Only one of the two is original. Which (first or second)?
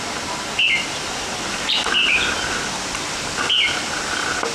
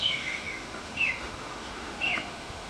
first